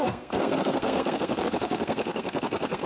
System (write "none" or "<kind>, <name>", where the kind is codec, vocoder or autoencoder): codec, SNAC